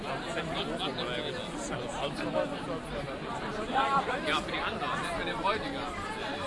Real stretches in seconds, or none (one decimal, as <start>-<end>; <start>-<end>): 0.0-3.5; 4.1-6.5